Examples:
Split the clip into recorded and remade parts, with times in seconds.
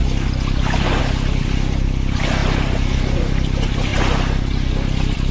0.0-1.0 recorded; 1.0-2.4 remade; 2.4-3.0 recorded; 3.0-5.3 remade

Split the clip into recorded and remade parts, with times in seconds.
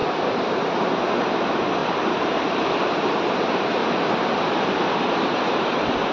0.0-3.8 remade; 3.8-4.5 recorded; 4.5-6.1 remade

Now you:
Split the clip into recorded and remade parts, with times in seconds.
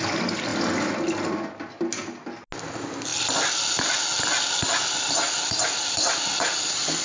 0.0-7.0 recorded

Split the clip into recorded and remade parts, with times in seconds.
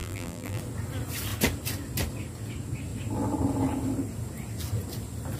0.0-0.6 remade; 0.6-5.4 recorded